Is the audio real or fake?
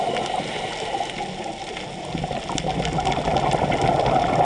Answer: real